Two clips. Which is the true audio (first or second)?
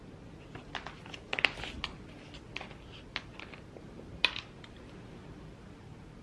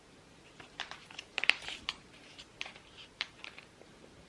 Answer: first